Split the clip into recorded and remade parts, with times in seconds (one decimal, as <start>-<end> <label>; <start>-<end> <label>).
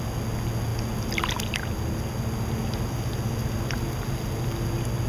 0.0-5.1 recorded